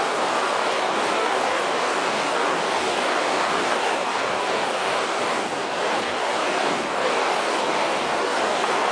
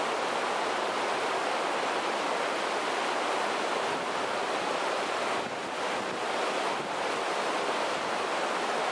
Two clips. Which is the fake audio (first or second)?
first